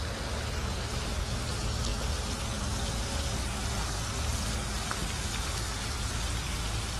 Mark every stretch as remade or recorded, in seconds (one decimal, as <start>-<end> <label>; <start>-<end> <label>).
0.0-7.0 recorded